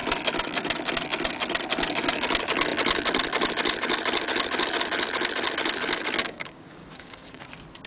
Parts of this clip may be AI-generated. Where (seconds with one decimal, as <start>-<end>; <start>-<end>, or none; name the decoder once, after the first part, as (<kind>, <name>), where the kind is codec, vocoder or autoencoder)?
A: 6.2-7.4 (codec, DAC)